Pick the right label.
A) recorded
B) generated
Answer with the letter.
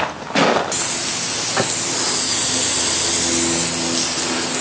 A